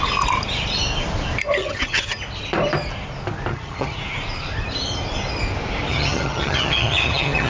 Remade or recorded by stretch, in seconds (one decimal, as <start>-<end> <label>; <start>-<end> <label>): 0.0-1.6 recorded; 1.6-2.2 remade; 2.2-3.5 recorded; 3.5-4.0 remade; 4.0-5.9 recorded; 5.9-7.5 remade